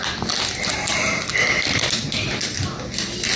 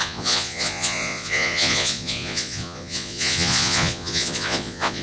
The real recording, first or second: first